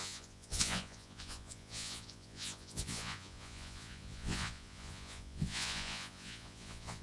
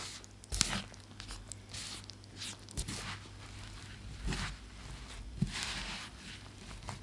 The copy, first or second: first